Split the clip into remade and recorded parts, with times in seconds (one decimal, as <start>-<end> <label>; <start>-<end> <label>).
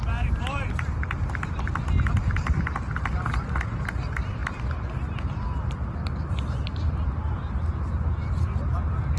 0.0-9.2 recorded